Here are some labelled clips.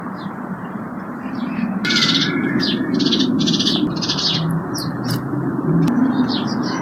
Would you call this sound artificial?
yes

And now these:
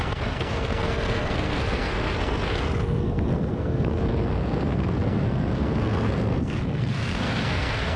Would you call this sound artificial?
yes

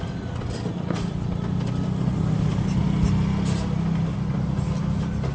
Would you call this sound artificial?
no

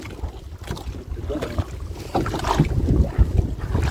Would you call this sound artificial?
no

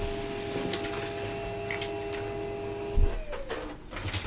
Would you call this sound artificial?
no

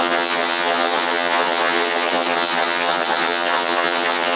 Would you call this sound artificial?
yes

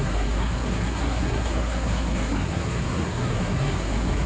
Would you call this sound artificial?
yes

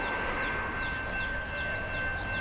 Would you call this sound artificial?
no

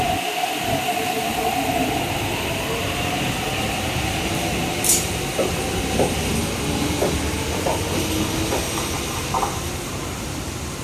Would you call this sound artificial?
no